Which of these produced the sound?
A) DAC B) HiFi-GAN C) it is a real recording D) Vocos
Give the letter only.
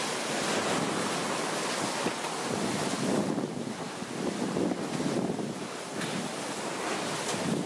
C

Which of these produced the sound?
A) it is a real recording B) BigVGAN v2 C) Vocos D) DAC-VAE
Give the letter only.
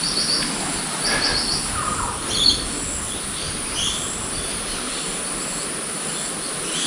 A